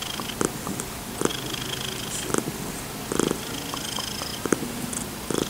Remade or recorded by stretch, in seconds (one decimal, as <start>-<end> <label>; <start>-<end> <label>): 0.0-0.7 recorded; 0.7-1.3 remade; 1.3-2.9 recorded; 2.9-5.5 remade